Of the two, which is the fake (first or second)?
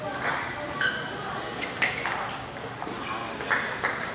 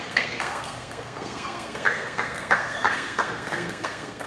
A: second